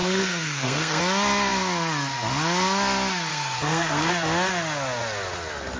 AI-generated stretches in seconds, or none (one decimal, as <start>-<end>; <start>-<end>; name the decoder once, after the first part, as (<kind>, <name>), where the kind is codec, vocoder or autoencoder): 0.0-1.0 (codec, SNAC); 3.3-4.1